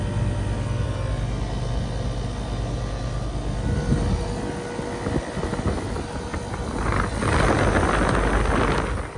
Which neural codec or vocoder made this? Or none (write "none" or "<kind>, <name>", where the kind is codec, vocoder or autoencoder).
none